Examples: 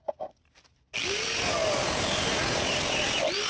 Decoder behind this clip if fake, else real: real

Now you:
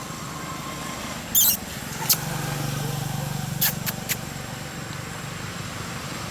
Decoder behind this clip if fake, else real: real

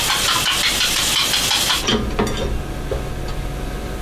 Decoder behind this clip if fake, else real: real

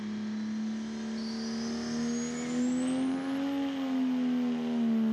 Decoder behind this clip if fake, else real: real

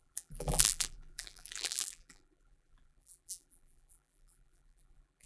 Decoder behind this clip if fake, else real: fake, vocoder, BigVGAN v2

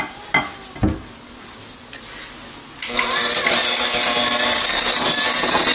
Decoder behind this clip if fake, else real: real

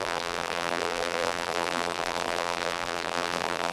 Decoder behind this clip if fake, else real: fake, vocoder, BigVGAN v2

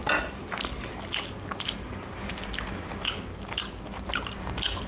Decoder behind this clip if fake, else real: real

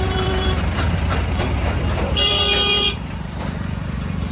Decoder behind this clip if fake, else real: fake, vocoder, BigVGAN v2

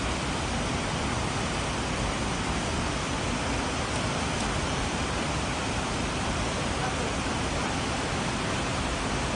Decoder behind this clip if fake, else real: real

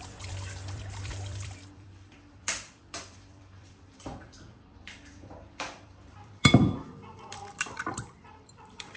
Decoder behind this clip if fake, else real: fake, vocoder, BigVGAN v2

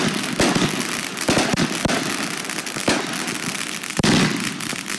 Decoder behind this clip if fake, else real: real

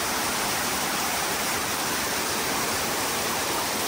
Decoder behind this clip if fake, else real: fake, vocoder, BigVGAN v2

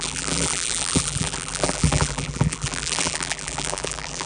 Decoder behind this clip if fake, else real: fake, vocoder, BigVGAN v2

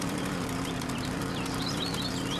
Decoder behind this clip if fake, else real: fake, vocoder, BigVGAN v2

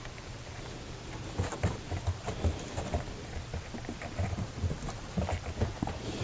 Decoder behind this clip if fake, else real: fake, vocoder, BigVGAN v2